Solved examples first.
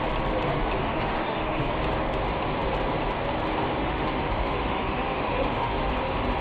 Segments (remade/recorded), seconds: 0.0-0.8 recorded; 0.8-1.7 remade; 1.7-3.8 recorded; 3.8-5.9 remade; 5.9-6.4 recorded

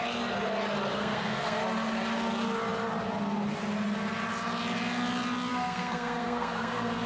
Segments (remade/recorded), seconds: 0.0-0.9 recorded; 0.9-1.6 remade; 1.6-5.5 recorded; 5.5-7.1 remade

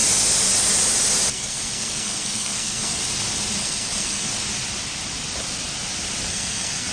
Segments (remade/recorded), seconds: 0.0-1.3 recorded; 1.3-3.0 remade; 3.0-3.6 recorded; 3.6-4.3 remade; 4.3-6.3 recorded; 6.3-6.9 remade

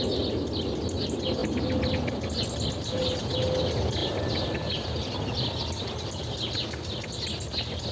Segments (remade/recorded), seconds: 0.0-7.9 recorded